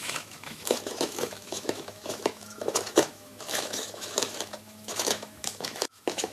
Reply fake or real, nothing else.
fake